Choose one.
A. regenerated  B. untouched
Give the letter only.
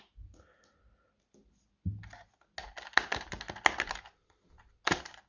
B